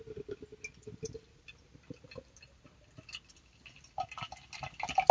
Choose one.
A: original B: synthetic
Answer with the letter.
A